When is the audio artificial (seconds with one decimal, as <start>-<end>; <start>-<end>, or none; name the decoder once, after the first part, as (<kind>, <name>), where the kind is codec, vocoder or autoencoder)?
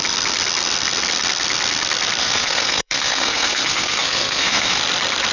2.2-4.8 (codec, SNAC)